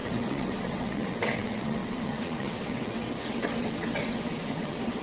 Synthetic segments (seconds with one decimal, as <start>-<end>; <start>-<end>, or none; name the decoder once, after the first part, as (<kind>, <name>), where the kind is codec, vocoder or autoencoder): 0.0-5.0 (vocoder, WaveNeXt)